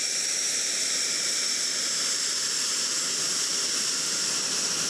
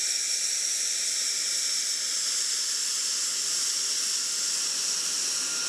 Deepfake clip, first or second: first